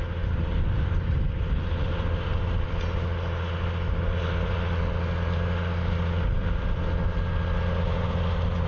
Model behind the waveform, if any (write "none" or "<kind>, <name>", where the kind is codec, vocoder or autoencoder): none